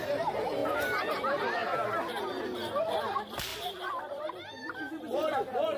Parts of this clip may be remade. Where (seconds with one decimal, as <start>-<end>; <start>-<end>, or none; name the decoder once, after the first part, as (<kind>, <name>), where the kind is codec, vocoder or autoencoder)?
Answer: 0.0-0.6 (vocoder, BigVGAN v2); 1.1-1.6; 2.8-5.8